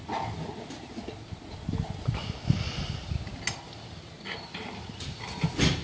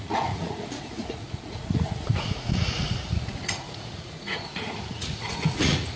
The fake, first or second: second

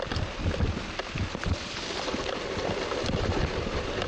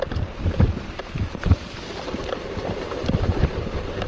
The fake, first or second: second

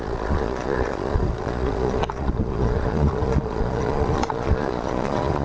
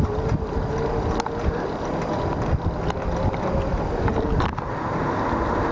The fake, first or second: first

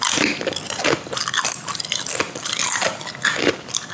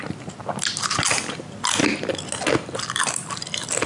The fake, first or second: first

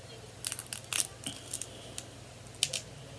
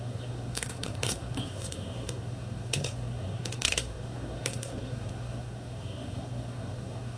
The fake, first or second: second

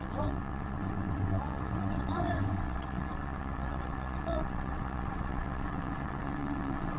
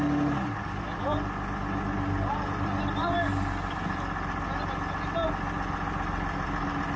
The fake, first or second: first